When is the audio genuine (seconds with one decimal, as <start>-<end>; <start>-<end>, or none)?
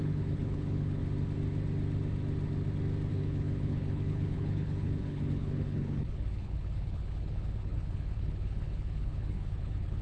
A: 1.0-3.1